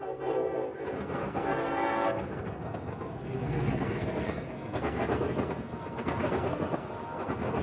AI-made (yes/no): yes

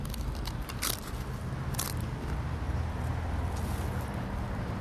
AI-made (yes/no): no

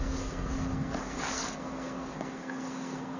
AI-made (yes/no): yes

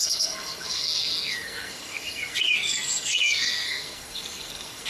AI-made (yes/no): yes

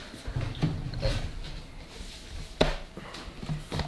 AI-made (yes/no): no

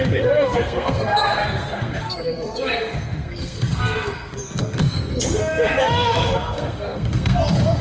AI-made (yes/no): yes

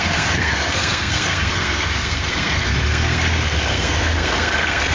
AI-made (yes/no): yes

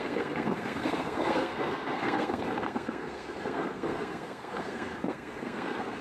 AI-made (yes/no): yes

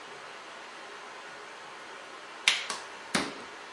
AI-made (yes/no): no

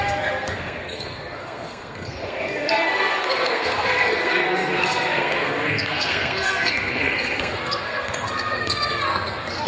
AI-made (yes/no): yes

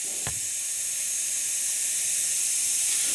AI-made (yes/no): no